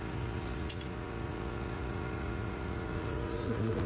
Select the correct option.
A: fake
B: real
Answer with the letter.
A